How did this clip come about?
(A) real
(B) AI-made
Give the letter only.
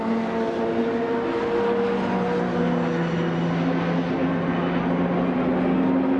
A